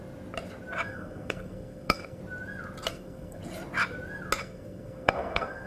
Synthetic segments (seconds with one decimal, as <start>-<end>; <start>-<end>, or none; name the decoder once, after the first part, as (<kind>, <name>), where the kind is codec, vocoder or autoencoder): 0.9-2.2 (codec, SNAC); 2.9-3.4; 4.4-5.7